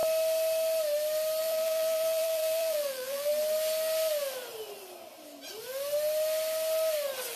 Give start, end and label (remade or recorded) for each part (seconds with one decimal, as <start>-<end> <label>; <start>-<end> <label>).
0.0-1.4 recorded; 1.4-3.3 remade; 3.3-7.4 recorded